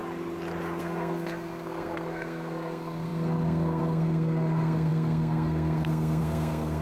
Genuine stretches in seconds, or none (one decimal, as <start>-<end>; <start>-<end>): 0.0-0.8